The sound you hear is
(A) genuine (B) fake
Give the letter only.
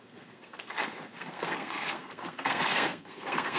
B